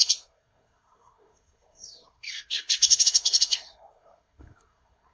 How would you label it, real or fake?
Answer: fake